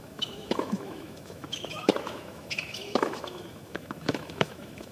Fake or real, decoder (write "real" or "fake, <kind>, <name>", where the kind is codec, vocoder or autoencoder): fake, autoencoder, DAC-VAE